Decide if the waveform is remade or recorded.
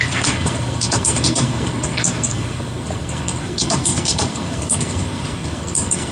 remade